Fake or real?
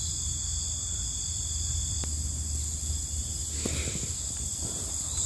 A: real